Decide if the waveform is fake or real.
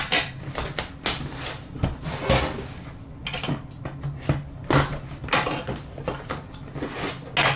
real